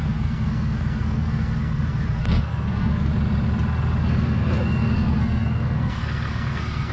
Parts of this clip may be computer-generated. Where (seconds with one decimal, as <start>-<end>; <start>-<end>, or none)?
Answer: 0.0-3.1; 4.0-6.9

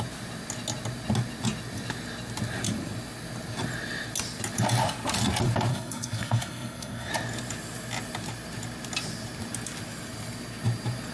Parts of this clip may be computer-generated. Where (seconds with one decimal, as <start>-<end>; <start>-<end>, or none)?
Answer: 5.7-7.1

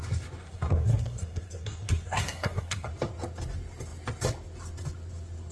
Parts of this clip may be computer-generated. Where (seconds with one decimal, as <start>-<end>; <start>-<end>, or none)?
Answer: 0.4-2.9